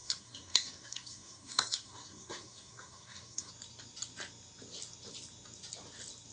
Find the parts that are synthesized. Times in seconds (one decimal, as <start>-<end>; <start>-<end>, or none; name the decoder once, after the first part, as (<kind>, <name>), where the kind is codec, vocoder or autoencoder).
0.0-3.5 (codec, SNAC)